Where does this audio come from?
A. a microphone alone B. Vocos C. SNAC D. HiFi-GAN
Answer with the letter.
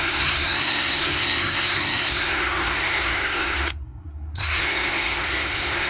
C